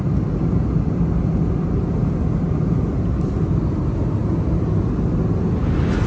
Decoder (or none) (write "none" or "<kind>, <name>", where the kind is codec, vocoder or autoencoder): none